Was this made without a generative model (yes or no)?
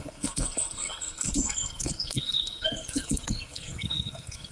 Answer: no